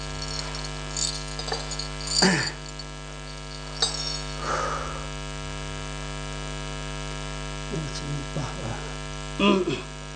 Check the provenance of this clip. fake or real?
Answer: real